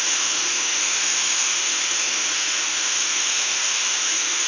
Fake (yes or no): yes